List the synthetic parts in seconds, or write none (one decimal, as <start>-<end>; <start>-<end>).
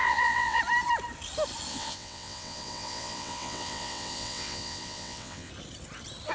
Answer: 0.0-0.6; 1.7-5.5